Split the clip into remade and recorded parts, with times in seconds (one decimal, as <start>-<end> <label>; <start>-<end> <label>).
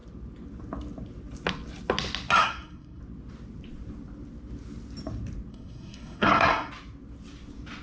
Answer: 0.0-2.4 recorded; 2.4-3.0 remade; 3.0-5.5 recorded; 5.5-6.7 remade; 6.7-7.8 recorded